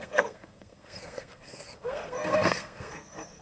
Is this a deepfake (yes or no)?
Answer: yes